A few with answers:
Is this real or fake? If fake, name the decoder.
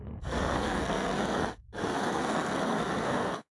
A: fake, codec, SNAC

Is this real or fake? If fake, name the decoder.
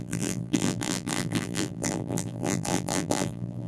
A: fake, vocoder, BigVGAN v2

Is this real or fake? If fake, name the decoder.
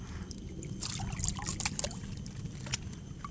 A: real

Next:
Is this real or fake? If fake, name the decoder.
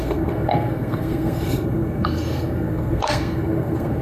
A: fake, codec, SNAC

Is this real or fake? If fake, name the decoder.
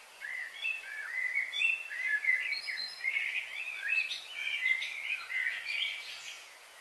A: fake, vocoder, Vocos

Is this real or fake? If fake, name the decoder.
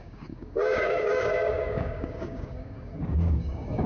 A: fake, codec, DAC